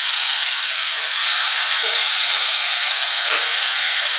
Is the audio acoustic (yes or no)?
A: no